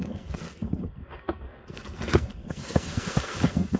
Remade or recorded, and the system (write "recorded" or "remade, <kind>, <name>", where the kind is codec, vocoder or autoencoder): remade, codec, SNAC